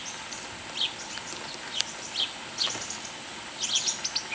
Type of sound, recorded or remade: recorded